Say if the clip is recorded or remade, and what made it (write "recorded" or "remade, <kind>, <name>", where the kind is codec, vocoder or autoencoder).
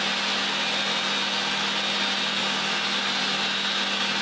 recorded